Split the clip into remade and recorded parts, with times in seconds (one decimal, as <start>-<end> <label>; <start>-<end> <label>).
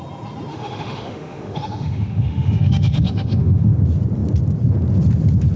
0.0-0.5 recorded; 0.5-3.7 remade; 3.7-5.6 recorded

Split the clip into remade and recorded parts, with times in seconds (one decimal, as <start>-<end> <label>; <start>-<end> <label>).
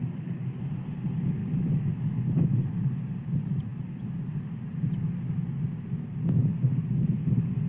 0.0-1.4 recorded; 1.4-2.7 remade; 2.7-7.7 recorded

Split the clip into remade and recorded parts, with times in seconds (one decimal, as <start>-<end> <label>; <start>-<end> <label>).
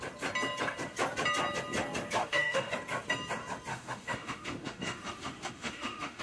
0.0-2.2 recorded; 2.2-2.7 remade; 2.7-3.7 recorded; 3.7-6.2 remade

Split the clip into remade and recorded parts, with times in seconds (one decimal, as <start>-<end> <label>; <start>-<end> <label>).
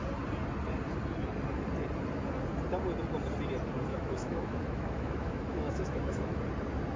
0.0-3.9 recorded; 3.9-6.4 remade; 6.4-7.0 recorded